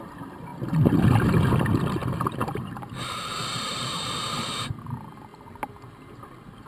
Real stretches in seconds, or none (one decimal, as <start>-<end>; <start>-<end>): 0.0-2.0; 4.8-6.7

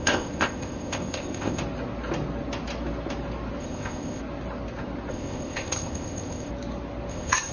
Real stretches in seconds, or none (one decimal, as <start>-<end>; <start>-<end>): 1.6-3.6; 4.2-5.1; 6.5-7.1

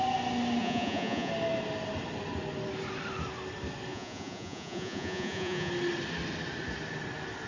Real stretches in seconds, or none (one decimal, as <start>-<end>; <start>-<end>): 0.0-0.6; 1.3-3.9; 5.7-7.5

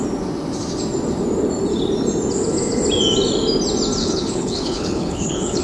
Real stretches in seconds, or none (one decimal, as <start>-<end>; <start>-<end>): 0.0-4.0

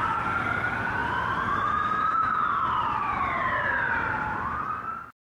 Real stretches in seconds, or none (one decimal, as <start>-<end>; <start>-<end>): 0.0-1.0; 2.3-2.8; 5.0-5.4

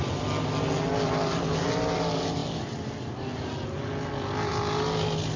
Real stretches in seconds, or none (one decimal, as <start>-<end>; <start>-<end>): 0.0-5.4

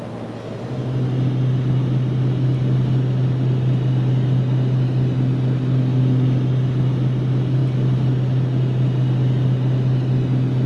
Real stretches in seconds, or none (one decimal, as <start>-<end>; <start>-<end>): 0.0-10.7

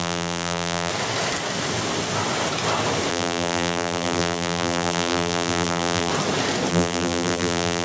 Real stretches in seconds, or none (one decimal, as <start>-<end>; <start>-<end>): 0.9-3.1; 6.1-6.7